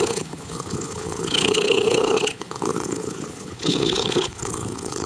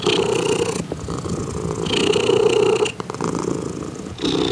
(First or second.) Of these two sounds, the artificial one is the first